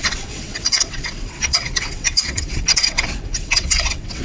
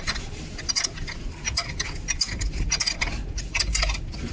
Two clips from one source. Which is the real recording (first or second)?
second